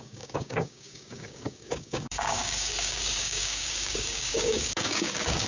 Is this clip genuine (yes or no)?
no